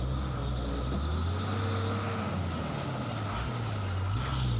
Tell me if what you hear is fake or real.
real